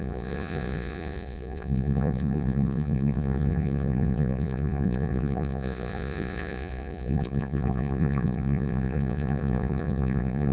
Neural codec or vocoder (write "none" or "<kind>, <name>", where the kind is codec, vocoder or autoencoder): vocoder, Vocos